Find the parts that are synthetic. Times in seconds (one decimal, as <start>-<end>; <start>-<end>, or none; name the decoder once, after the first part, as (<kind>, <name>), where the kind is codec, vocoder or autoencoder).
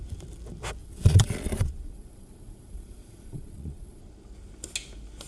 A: 0.8-4.0 (vocoder, Vocos)